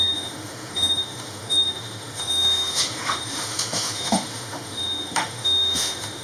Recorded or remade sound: remade